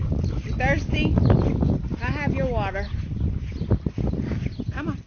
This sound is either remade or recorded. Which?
recorded